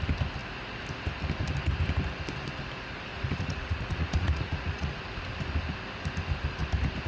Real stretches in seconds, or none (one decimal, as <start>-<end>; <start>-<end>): 0.0-3.1; 5.0-7.1

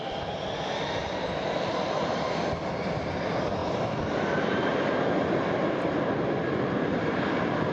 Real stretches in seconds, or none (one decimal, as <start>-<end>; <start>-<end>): 0.0-7.7

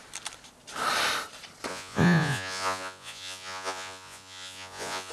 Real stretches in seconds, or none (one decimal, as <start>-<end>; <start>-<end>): 0.0-1.7

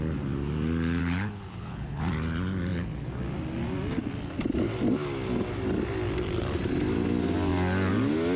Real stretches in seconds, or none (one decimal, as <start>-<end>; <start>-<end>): 0.0-1.0; 2.0-8.4

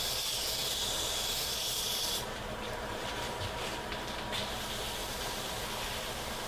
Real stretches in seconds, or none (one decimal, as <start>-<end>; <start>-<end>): 0.0-0.6; 4.5-5.0; 6.0-6.5

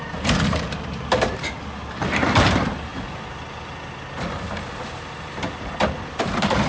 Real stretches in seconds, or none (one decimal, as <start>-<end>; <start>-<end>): 2.9-6.2